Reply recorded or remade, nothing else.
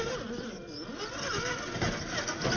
recorded